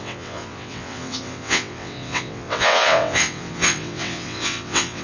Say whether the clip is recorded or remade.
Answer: remade